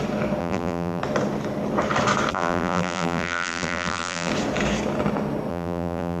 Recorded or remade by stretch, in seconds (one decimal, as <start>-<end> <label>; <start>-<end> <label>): 0.0-0.4 recorded; 0.4-1.0 remade; 1.0-2.3 recorded; 2.3-4.3 remade; 4.3-5.5 recorded; 5.5-6.2 remade